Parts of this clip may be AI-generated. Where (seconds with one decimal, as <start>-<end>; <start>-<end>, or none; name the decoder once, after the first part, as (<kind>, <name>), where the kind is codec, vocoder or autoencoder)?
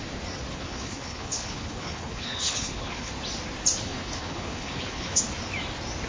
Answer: 0.5-3.1 (codec, HILCodec); 3.9-5.2